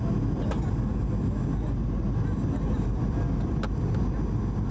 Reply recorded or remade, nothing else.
recorded